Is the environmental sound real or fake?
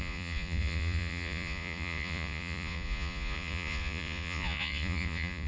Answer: fake